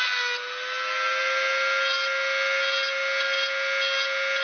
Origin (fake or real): real